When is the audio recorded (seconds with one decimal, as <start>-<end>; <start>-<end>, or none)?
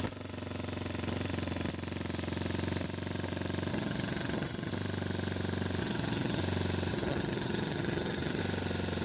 0.0-3.7; 4.7-5.8; 6.4-6.9; 8.4-9.0